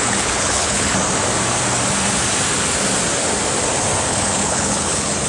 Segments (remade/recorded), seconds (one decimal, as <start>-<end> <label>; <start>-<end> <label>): 0.0-0.9 remade; 0.9-4.1 recorded; 4.1-5.3 remade